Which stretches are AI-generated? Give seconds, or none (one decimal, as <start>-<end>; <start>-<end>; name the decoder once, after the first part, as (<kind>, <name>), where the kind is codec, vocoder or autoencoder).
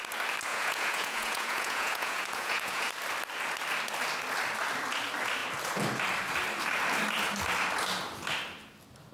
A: 0.5-2.9 (vocoder, Vocos)